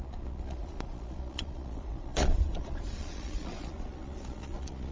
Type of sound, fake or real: fake